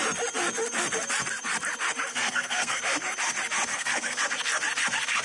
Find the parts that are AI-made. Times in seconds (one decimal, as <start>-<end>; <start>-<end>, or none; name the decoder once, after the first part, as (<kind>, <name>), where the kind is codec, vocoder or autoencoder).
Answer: 2.1-2.8 (codec, SNAC); 3.7-4.2